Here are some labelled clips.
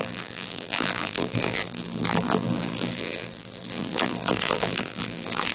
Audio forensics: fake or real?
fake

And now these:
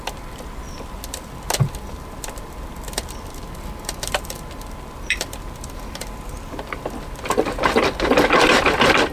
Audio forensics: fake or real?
fake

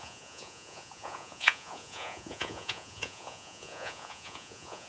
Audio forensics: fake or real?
fake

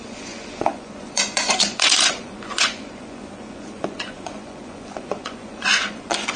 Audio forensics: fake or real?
fake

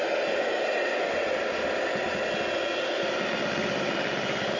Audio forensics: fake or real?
real